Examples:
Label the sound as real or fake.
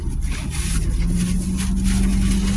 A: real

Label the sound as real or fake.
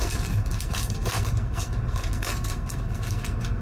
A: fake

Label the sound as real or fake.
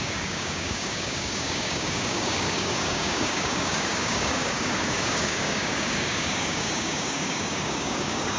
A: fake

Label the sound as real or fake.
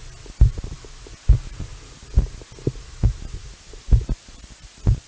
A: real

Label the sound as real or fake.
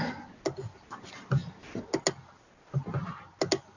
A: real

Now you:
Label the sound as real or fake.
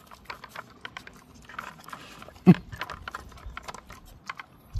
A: real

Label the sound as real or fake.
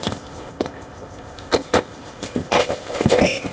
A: fake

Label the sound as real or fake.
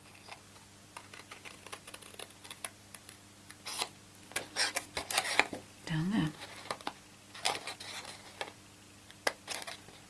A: real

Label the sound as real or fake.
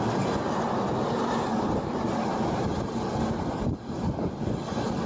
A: real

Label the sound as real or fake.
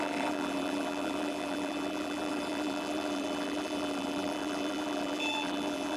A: fake